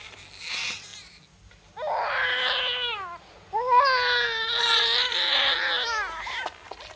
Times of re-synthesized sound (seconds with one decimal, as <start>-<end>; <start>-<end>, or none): none